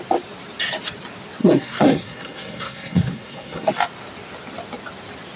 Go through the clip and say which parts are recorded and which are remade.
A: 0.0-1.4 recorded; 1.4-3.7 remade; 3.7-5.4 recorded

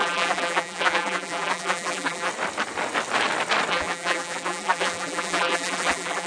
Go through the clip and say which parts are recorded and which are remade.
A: 0.0-2.3 remade; 2.3-3.7 recorded; 3.7-6.3 remade

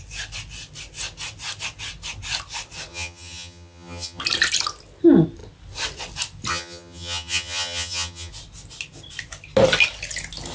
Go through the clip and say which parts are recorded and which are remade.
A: 0.0-2.9 recorded; 2.9-4.2 remade; 4.2-6.5 recorded; 6.5-8.3 remade; 8.3-10.5 recorded

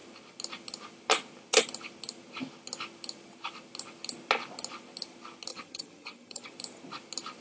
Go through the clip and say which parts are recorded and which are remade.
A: 0.0-5.5 recorded; 5.5-6.5 remade; 6.5-7.4 recorded

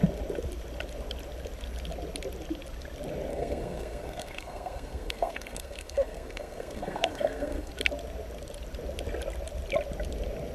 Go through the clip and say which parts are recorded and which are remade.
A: 0.0-3.3 recorded; 3.3-7.7 remade; 7.7-10.5 recorded

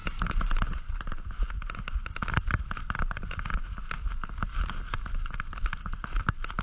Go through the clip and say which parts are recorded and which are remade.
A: 0.0-1.2 remade; 1.2-6.6 recorded

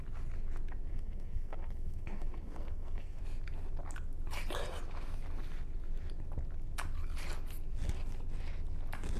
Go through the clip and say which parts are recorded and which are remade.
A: 0.0-0.9 recorded; 0.9-3.2 remade; 3.2-9.2 recorded

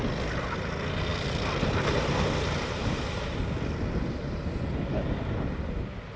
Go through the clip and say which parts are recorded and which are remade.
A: 0.0-6.2 recorded